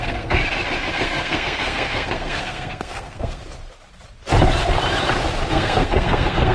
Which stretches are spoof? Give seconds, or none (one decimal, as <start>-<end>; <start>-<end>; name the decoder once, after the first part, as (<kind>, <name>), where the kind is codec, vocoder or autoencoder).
0.0-0.4 (codec, SNAC); 0.9-3.4; 5.5-6.5